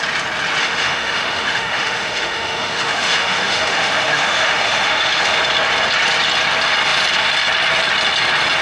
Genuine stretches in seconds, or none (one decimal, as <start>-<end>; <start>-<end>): 0.0-0.6; 5.4-8.6